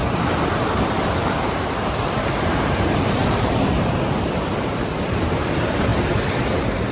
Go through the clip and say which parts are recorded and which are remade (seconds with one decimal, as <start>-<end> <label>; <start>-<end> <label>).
0.0-1.4 recorded; 1.4-6.9 remade